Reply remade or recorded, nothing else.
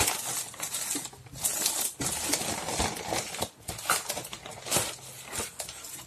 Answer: recorded